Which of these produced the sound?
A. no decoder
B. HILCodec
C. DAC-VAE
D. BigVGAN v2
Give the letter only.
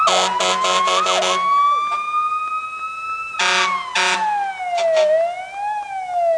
A